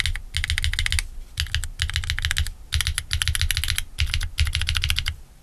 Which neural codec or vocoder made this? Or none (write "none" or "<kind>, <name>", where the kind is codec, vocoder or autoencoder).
none